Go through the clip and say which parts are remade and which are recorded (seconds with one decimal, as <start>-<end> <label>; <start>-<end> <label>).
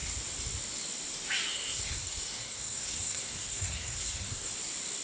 0.0-1.5 recorded; 1.5-4.5 remade; 4.5-5.0 recorded